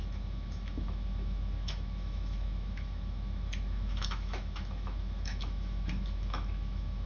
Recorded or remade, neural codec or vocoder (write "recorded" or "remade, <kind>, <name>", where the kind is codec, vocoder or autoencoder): remade, autoencoder, DAC-VAE